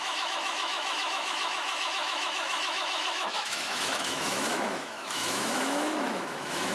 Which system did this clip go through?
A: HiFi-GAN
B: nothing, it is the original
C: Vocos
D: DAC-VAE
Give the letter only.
D